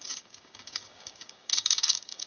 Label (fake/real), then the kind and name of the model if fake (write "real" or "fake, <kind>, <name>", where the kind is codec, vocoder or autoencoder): fake, codec, DAC